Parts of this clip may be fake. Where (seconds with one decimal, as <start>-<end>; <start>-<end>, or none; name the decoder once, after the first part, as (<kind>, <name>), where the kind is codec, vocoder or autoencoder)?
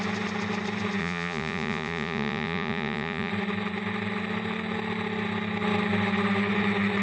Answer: 1.0-3.3 (vocoder, Vocos)